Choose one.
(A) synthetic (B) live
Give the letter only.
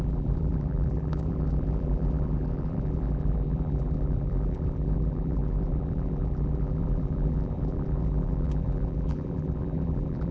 A